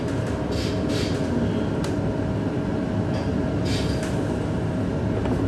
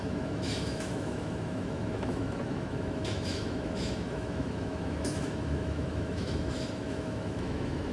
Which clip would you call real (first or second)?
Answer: first